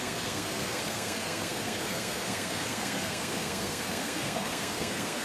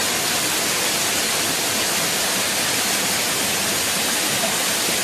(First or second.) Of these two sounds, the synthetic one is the first